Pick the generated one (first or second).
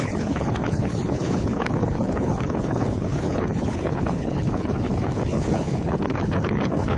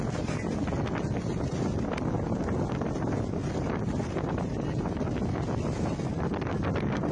first